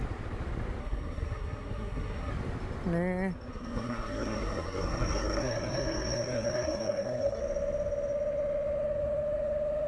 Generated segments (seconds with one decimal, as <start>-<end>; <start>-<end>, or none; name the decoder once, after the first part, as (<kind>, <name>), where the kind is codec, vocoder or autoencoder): 0.8-2.3 (codec, SNAC); 3.5-7.4